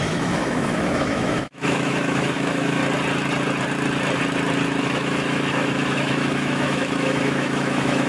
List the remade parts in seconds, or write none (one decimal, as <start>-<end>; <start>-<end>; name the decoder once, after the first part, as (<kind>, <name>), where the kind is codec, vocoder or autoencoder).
0.0-2.8 (autoencoder, DAC-VAE); 4.8-8.1